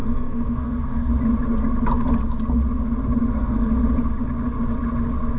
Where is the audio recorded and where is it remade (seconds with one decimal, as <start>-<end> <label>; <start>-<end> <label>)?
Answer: 0.0-1.1 remade; 1.1-3.2 recorded; 3.2-3.7 remade; 3.7-5.4 recorded